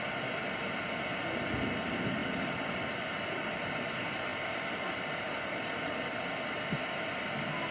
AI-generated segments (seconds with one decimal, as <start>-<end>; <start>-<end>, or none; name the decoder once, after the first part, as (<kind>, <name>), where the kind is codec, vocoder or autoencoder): 2.2-3.0 (vocoder, BigVGAN v2); 4.3-4.9